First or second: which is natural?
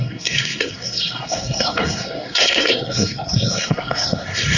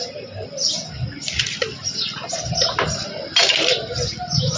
second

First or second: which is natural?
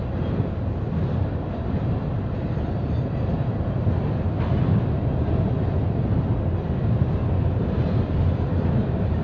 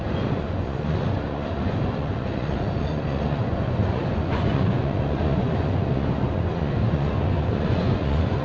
first